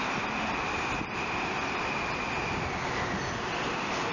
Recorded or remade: recorded